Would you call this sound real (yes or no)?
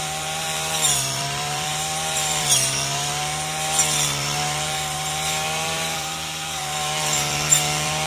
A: no